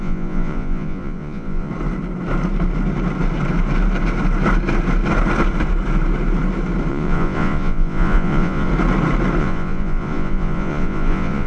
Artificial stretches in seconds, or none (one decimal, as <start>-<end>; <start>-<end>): 0.0-1.7; 6.9-8.7; 9.4-11.5

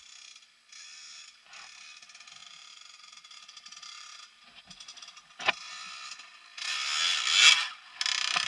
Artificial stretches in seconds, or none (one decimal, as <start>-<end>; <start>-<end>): 2.4-4.2

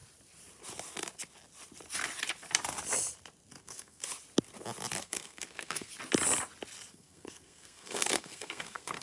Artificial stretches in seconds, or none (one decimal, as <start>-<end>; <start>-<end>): 3.6-4.0; 5.0-5.9; 6.9-9.0